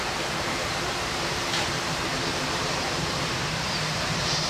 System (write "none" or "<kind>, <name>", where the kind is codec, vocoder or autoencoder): vocoder, BigVGAN v2